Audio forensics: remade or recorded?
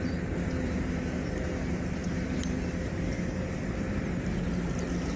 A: recorded